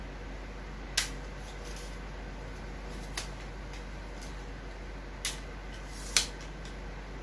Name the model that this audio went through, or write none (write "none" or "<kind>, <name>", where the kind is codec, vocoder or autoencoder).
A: none